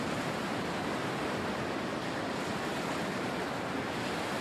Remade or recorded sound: remade